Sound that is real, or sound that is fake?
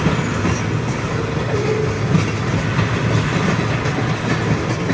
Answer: real